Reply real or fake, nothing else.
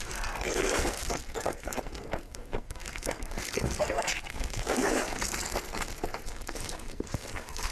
fake